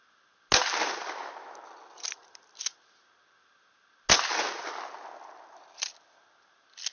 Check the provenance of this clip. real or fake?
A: real